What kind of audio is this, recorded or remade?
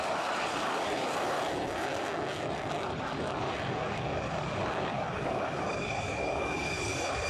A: remade